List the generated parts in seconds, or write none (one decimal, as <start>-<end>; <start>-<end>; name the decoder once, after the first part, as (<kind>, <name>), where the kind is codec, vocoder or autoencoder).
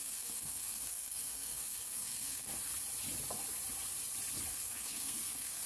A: 0.0-2.5 (codec, SNAC); 4.5-5.7